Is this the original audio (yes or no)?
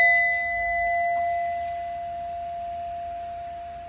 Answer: yes